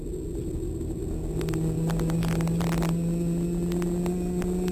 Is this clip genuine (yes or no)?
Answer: yes